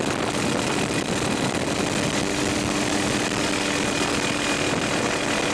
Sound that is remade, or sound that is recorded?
recorded